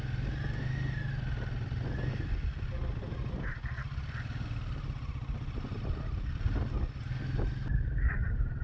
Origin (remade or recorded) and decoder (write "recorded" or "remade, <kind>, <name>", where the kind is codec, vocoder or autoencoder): recorded